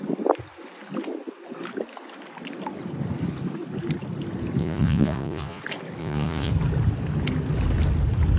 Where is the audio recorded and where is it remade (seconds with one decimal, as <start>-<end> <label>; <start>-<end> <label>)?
0.0-4.6 recorded; 4.6-5.6 remade; 5.6-6.0 recorded; 6.0-6.5 remade; 6.5-8.4 recorded